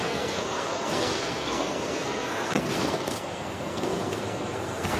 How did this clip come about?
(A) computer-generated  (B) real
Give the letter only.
A